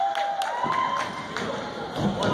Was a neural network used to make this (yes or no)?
no